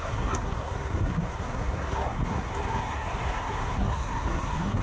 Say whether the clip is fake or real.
fake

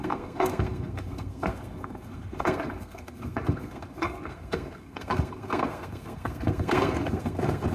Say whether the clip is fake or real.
fake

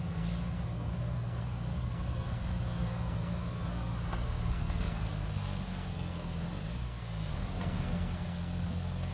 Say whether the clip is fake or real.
fake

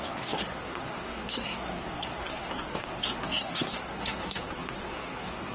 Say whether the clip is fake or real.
fake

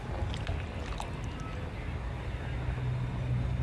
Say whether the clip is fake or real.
real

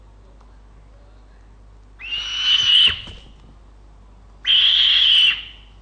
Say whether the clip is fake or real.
real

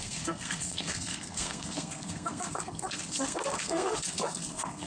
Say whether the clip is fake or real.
fake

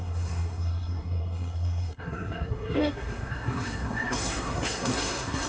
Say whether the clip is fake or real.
fake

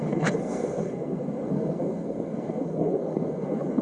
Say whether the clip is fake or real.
fake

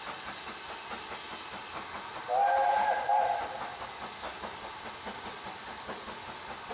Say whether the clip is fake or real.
real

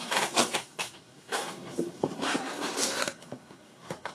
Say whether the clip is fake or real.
fake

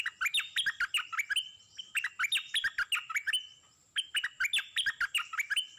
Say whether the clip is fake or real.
real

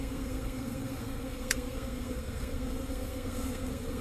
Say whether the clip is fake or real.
fake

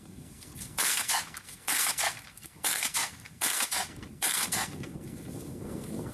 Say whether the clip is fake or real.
fake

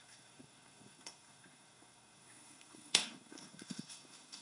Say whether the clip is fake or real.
fake